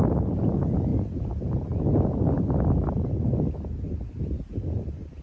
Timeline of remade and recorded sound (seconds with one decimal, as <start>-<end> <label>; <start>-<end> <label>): 0.0-5.2 recorded